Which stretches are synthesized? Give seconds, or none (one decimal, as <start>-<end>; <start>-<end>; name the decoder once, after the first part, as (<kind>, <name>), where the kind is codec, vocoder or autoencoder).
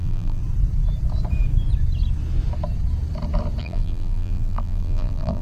0.0-0.4 (vocoder, BigVGAN v2); 3.6-5.4